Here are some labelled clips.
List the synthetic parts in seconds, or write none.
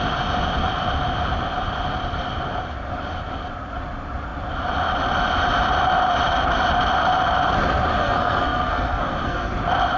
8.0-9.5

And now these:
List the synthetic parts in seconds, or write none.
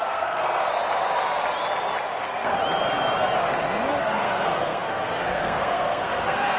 0.0-0.7; 2.2-2.6; 4.0-6.6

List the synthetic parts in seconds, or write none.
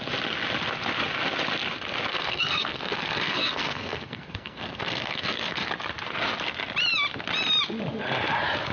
2.1-5.7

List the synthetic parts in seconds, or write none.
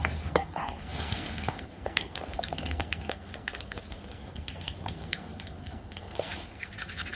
0.0-7.1